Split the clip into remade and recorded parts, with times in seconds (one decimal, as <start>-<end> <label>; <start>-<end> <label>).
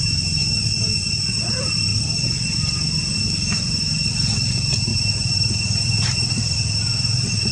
0.0-1.9 recorded; 1.9-3.0 remade; 3.0-3.8 recorded; 3.8-4.5 remade; 4.5-4.9 recorded; 4.9-6.9 remade; 6.9-7.5 recorded